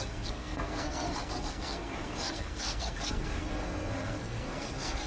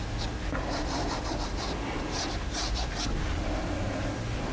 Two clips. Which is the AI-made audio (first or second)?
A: first